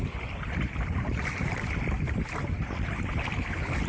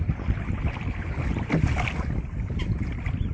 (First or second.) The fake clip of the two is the first